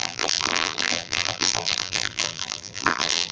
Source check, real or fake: fake